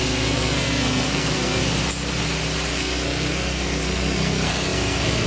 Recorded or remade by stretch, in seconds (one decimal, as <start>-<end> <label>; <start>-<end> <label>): 0.0-1.6 remade; 1.6-2.7 recorded; 2.7-5.3 remade